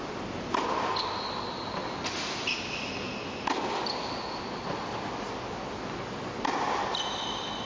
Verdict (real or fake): real